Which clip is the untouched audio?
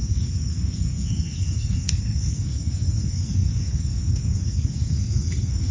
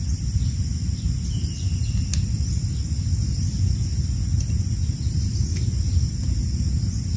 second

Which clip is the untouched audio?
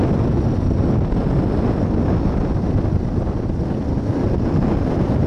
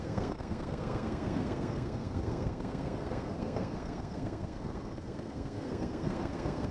first